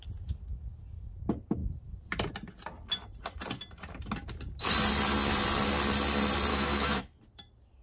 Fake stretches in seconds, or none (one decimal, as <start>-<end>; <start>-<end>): 6.5-7.2